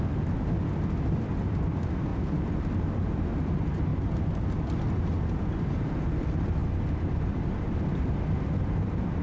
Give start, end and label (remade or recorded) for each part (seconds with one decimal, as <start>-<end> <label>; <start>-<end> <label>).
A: 0.0-6.6 recorded; 6.6-7.8 remade; 7.8-9.2 recorded